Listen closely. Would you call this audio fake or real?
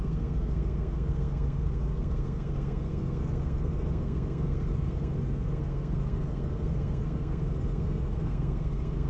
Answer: fake